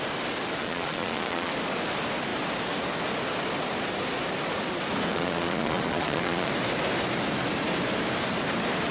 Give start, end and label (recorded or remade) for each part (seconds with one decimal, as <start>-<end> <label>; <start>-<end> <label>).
0.0-0.6 recorded; 0.6-1.5 remade; 1.5-5.1 recorded; 5.1-6.5 remade; 6.5-8.9 recorded